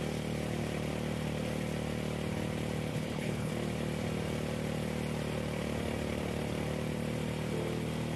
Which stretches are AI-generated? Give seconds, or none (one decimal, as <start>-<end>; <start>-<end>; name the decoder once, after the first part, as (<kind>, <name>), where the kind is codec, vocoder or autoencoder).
2.9-3.5 (codec, HILCodec)

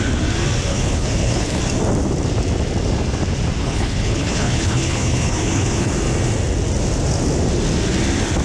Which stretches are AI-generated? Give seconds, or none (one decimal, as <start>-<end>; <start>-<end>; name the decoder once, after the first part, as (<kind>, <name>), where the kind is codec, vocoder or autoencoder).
0.7-1.6 (codec, HILCodec); 3.6-5.9

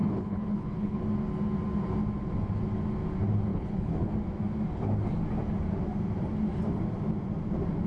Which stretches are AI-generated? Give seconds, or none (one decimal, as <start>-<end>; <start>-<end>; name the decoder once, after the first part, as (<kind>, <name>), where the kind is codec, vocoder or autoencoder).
0.0-1.0 (codec, HILCodec); 3.5-4.1

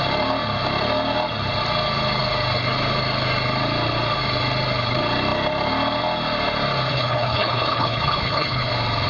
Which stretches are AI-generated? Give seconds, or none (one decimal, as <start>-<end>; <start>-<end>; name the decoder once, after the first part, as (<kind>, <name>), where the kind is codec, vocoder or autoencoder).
6.9-8.7 (codec, HILCodec)

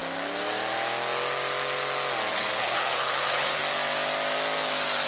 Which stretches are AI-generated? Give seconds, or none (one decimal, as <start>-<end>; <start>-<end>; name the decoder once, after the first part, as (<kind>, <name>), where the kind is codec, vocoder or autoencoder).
2.3-3.6 (codec, HILCodec)

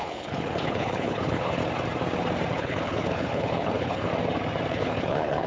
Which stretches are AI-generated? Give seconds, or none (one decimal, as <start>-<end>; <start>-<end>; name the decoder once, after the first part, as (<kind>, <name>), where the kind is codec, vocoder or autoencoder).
0.0-1.6 (codec, HILCodec); 2.5-4.1; 4.7-5.5

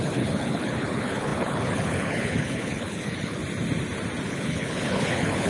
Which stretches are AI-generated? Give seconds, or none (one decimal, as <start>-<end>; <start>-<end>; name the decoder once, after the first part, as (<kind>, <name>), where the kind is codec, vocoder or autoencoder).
0.0-3.4 (codec, HILCodec); 4.3-5.5

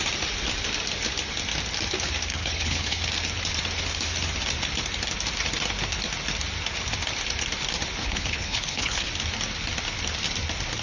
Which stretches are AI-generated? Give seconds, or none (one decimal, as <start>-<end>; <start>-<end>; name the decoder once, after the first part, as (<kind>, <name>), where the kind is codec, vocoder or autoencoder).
2.3-3.0 (codec, HILCodec); 8.0-9.1